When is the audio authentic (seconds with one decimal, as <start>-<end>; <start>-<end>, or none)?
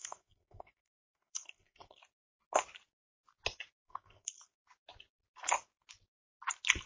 2.0-3.7; 4.6-6.9